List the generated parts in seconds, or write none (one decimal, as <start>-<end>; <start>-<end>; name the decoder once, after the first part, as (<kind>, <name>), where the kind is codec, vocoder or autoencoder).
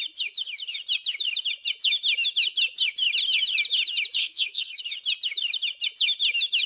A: 4.2-4.8 (codec, SNAC)